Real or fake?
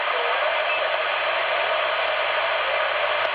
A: real